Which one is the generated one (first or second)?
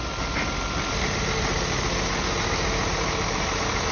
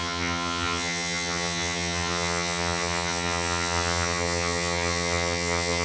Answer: second